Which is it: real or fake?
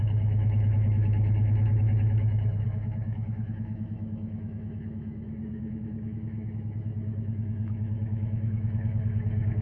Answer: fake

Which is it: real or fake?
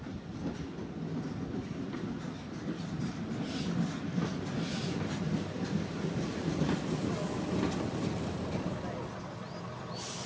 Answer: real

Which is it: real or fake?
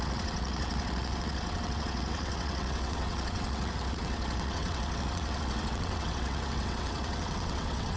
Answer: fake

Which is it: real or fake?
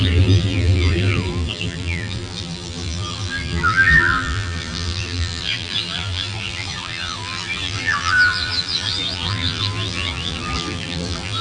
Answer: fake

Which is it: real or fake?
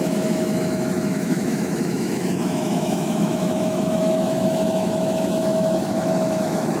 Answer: fake